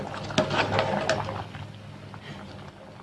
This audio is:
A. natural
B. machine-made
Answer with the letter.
A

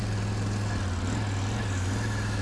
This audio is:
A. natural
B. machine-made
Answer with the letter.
A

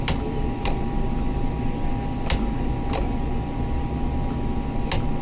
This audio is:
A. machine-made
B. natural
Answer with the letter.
B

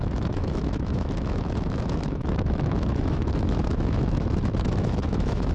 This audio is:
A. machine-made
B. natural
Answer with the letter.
A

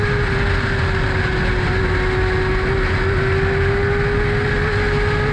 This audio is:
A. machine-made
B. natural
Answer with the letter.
B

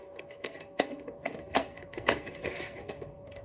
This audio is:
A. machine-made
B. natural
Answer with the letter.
A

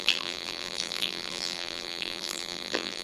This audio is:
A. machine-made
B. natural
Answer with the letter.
A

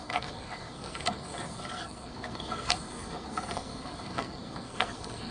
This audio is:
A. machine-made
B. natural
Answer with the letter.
A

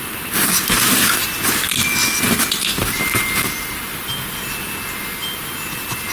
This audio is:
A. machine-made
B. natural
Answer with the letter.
B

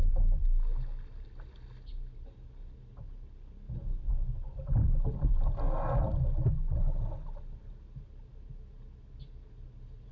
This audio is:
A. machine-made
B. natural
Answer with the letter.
B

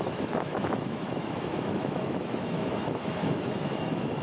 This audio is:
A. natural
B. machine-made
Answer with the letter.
B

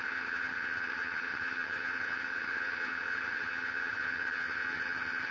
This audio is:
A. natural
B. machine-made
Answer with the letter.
B